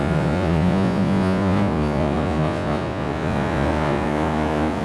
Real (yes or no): no